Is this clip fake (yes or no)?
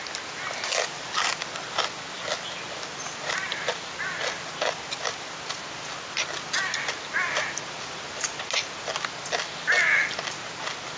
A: no